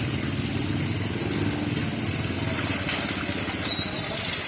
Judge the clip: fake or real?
real